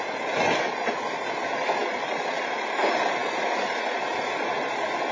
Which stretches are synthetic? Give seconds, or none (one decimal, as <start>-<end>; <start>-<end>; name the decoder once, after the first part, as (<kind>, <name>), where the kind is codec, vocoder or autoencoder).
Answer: none